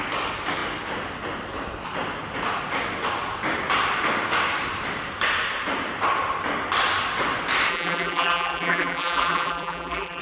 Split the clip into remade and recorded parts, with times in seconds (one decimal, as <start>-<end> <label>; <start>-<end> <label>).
0.0-7.7 recorded; 7.7-10.2 remade

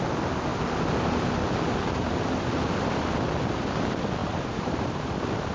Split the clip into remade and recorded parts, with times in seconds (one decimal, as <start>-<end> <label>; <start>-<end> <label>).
0.0-4.2 recorded; 4.2-5.1 remade; 5.1-5.5 recorded

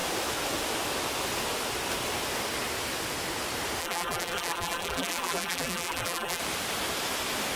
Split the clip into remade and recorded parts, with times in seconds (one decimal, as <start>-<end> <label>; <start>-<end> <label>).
0.0-3.8 recorded; 3.8-6.4 remade; 6.4-7.6 recorded

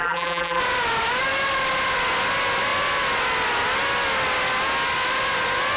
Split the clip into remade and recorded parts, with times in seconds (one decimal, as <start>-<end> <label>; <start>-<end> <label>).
0.0-0.6 remade; 0.6-5.8 recorded